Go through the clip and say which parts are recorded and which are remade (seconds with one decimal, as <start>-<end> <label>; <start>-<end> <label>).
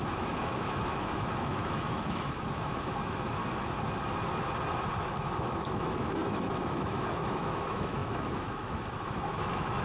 0.0-3.4 remade; 3.4-5.1 recorded; 5.1-9.8 remade